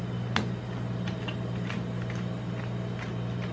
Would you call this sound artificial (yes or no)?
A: no